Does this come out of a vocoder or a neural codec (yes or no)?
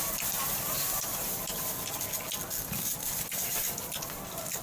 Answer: no